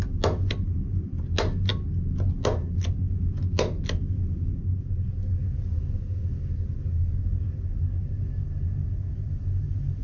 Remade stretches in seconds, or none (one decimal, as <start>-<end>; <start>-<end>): none